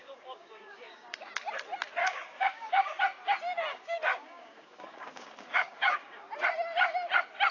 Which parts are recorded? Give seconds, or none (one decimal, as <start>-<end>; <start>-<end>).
1.3-2.0; 3.0-3.7; 6.2-7.5